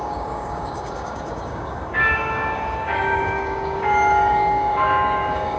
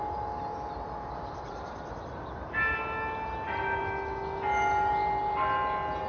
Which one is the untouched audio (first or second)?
second